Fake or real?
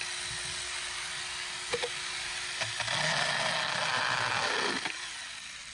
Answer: real